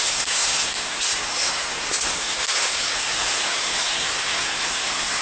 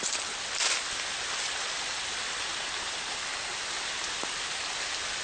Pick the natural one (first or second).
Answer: second